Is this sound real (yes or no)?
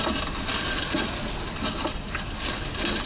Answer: yes